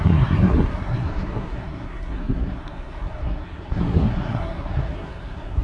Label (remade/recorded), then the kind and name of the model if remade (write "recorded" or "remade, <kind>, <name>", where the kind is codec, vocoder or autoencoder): remade, codec, SNAC